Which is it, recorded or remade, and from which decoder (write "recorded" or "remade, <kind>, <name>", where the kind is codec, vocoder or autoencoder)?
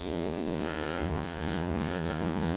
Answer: remade, vocoder, Vocos